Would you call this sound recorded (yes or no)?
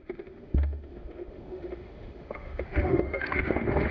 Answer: no